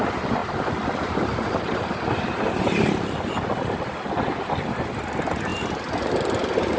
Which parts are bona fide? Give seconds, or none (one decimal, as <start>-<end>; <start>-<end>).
0.0-6.8